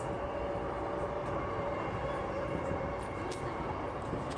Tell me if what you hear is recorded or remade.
recorded